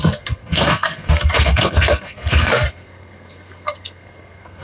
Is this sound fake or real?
fake